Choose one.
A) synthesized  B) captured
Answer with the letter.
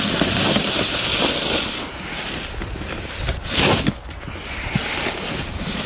B